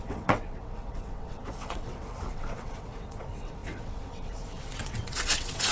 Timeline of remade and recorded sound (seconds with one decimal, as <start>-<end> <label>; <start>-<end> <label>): 0.0-5.7 remade